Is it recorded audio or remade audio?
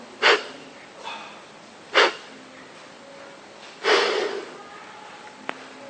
recorded